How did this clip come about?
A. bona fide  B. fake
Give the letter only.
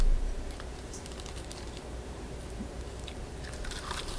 B